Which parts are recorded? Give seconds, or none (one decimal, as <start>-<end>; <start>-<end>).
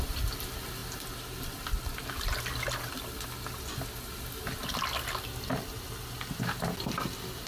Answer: 0.0-0.8; 2.4-7.5